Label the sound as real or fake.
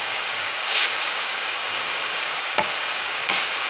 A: fake